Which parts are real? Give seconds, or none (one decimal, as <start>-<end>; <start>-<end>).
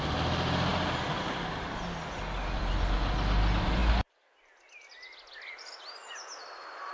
0.0-6.9